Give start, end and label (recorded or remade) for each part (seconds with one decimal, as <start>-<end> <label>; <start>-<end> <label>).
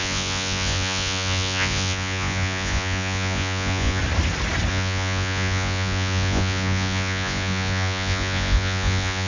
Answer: 0.0-4.0 remade; 4.0-4.7 recorded; 4.7-9.3 remade